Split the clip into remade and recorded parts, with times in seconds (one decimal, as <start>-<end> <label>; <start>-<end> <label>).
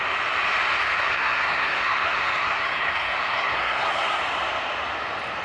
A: 0.0-1.0 recorded; 1.0-4.2 remade; 4.2-5.4 recorded